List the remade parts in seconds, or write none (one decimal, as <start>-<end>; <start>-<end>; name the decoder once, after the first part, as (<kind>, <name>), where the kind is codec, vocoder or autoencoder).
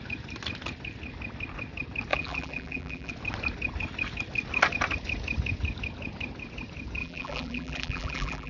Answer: 2.1-3.1 (vocoder, BigVGAN v2); 7.0-8.5